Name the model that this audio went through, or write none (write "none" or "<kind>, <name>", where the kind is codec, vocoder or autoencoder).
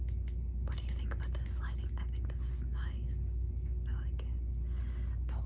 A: none